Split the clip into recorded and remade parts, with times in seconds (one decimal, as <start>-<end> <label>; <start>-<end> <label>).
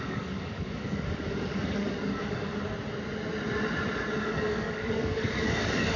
0.0-2.5 remade; 2.5-4.2 recorded; 4.2-6.0 remade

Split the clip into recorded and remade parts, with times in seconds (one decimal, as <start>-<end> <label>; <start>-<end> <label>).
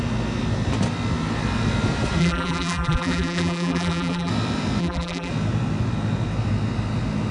0.0-2.2 recorded; 2.2-4.3 remade; 4.3-4.8 recorded; 4.8-5.3 remade; 5.3-7.3 recorded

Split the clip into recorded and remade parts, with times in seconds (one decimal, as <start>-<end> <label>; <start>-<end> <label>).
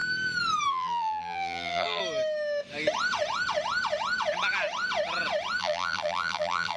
0.0-0.7 recorded; 0.7-2.0 remade; 2.0-5.6 recorded; 5.6-6.8 remade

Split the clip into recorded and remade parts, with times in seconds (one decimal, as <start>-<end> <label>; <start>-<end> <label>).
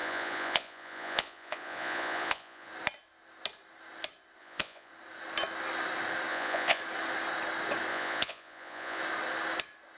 0.0-2.7 remade; 2.7-4.4 recorded; 4.4-4.9 remade; 4.9-6.3 recorded; 6.3-6.8 remade; 6.8-7.9 recorded; 7.9-9.0 remade; 9.0-10.0 recorded